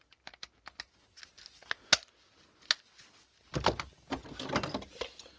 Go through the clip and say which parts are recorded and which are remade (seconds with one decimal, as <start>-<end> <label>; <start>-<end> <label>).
0.0-5.4 recorded